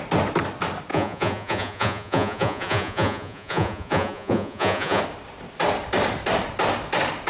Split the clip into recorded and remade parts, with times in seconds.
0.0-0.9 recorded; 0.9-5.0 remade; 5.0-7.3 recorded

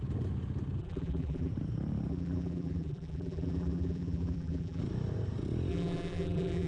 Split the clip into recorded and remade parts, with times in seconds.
0.0-0.8 recorded; 0.8-1.5 remade; 1.5-2.1 recorded; 2.1-4.8 remade; 4.8-5.7 recorded; 5.7-6.7 remade

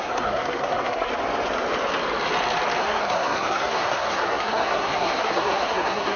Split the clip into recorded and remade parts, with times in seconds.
0.0-1.1 remade; 1.1-2.8 recorded; 2.8-6.2 remade